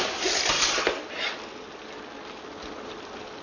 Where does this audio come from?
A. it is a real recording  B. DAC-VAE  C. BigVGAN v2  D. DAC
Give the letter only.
A